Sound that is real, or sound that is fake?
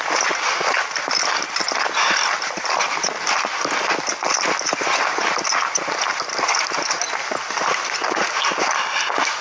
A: real